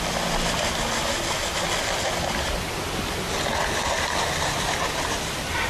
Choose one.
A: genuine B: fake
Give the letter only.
A